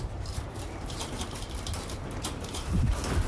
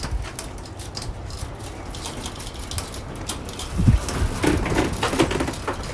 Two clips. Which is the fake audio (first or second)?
first